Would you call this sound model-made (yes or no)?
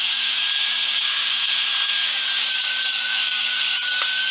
yes